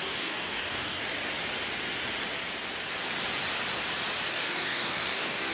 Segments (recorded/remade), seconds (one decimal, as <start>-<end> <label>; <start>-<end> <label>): 0.0-1.0 remade; 1.0-4.3 recorded; 4.3-5.5 remade